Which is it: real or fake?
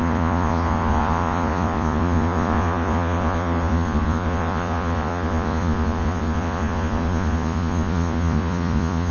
fake